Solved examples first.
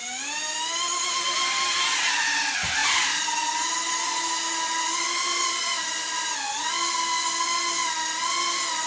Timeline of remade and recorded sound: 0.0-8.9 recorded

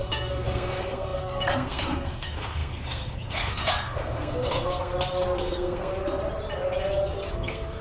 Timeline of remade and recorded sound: 0.0-4.9 remade; 4.9-5.4 recorded; 5.4-5.9 remade; 5.9-7.3 recorded; 7.3-7.8 remade

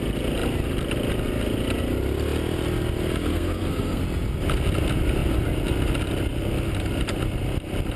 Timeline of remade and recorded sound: 0.0-3.3 recorded; 3.3-4.0 remade; 4.0-8.0 recorded